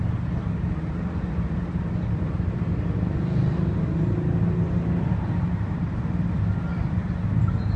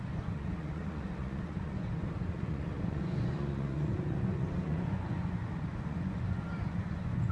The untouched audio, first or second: first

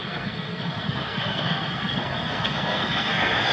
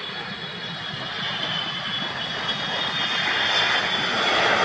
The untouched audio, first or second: second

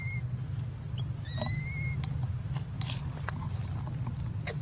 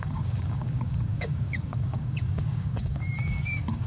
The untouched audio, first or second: first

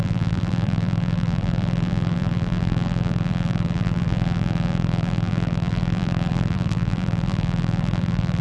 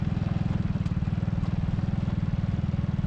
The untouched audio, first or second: second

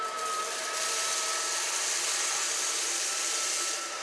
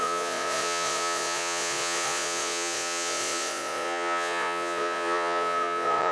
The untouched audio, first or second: first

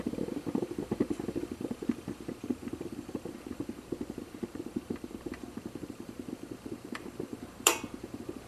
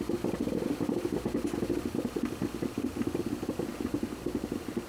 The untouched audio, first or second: second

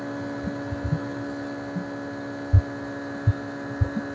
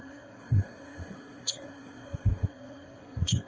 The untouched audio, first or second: first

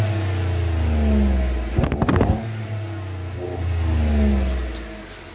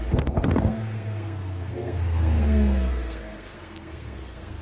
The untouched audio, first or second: first